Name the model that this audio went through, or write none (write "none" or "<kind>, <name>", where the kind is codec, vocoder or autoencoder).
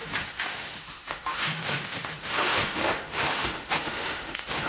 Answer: autoencoder, DAC-VAE